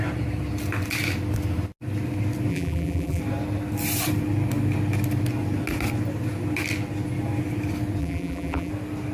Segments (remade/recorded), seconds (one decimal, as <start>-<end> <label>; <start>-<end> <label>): 0.0-2.5 recorded; 2.5-3.2 remade; 3.2-8.0 recorded; 8.0-8.7 remade; 8.7-9.1 recorded